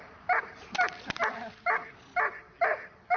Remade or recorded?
recorded